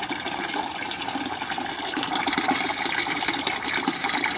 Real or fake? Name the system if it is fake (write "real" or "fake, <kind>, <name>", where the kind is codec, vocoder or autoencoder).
real